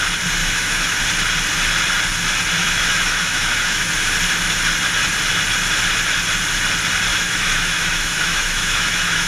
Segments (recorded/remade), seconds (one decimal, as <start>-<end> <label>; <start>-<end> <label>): 0.0-0.4 recorded; 0.4-1.0 remade; 1.0-2.6 recorded; 2.6-3.9 remade; 3.9-7.1 recorded; 7.1-9.3 remade